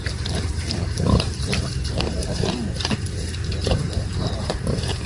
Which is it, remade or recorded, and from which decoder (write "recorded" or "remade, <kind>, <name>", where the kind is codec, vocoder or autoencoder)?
remade, vocoder, BigVGAN v2